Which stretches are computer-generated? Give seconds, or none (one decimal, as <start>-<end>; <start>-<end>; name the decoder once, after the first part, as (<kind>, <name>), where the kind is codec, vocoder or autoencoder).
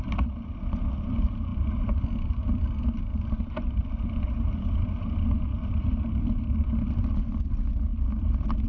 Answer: none